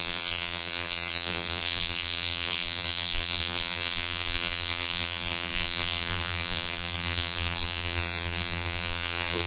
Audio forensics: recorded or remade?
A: remade